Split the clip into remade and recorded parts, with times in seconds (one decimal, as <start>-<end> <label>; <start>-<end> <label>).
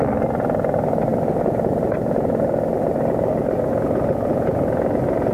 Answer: 0.0-5.3 recorded